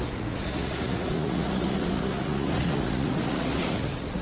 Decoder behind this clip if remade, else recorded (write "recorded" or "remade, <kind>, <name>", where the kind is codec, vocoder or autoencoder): remade, vocoder, Vocos